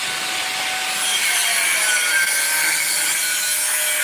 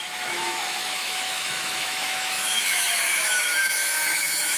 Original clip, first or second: first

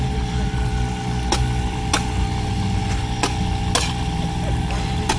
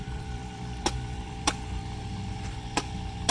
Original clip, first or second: first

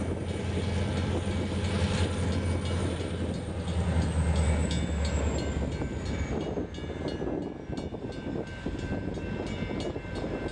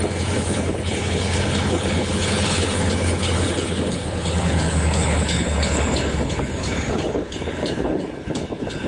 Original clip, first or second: first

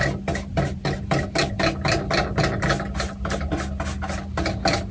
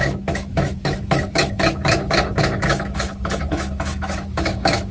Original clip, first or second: first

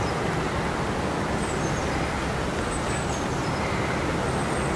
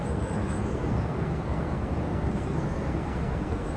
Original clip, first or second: first